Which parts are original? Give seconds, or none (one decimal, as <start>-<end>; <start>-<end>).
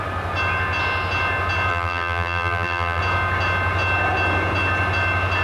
0.0-1.7; 3.0-5.4